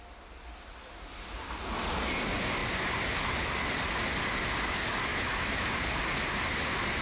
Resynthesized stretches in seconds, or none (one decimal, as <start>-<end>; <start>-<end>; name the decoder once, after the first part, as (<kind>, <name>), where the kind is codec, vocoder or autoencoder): 5.1-5.7 (autoencoder, DAC-VAE)